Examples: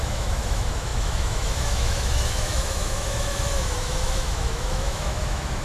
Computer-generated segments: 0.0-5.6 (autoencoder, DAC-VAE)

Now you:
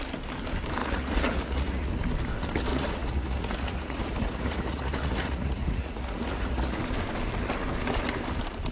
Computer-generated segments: 0.8-1.9 (vocoder, Vocos); 2.7-6.8

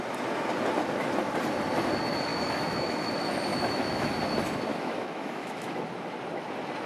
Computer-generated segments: 2.3-3.1 (autoencoder, DAC-VAE); 3.5-4.1; 4.7-5.8

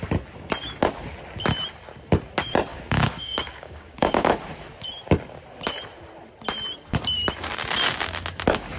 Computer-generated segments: 2.7-4.3 (codec, DAC)

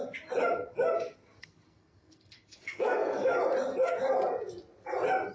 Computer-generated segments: 1.4-3.3 (codec, SNAC)

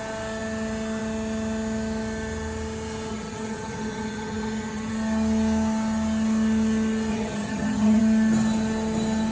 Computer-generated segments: 3.1-4.9 (vocoder, HiFi-GAN); 7.1-8.0

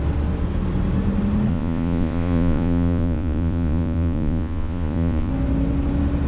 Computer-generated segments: 1.5-5.3 (vocoder, Vocos)

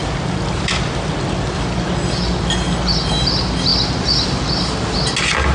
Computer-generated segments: none